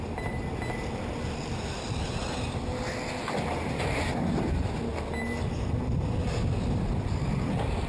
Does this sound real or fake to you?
real